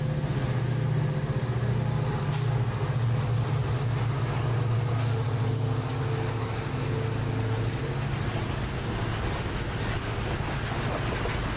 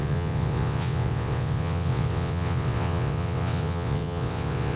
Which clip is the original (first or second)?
first